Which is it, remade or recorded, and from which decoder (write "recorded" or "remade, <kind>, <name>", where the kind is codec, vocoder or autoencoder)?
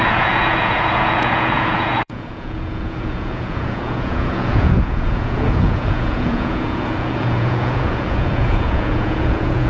remade, vocoder, Vocos